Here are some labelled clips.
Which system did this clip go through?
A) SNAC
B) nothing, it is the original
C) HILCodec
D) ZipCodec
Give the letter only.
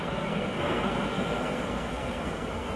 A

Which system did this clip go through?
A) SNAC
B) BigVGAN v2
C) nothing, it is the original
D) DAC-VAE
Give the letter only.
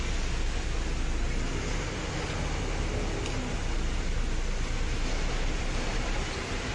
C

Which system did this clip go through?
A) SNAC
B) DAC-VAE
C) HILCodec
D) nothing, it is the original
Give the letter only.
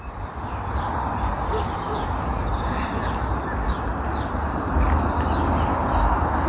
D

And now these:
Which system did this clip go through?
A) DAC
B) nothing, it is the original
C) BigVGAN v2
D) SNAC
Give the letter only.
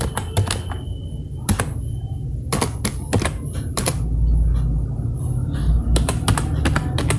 B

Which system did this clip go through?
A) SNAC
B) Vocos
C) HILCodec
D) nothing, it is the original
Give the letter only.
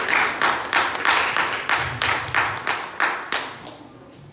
D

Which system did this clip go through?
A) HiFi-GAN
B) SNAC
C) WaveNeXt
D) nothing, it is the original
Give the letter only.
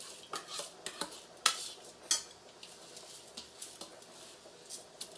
D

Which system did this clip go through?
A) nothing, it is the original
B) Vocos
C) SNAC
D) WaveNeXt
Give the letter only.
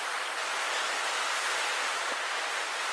A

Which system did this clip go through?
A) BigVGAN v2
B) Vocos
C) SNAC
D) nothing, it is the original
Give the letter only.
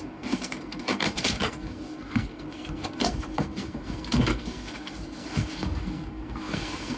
C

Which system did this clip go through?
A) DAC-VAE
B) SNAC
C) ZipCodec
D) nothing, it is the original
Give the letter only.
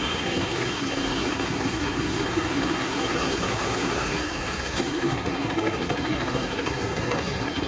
B